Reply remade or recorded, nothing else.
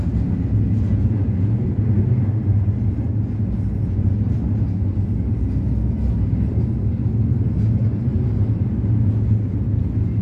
recorded